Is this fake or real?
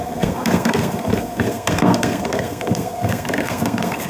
fake